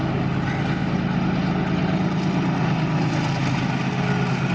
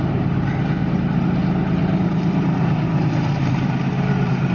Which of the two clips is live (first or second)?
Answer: first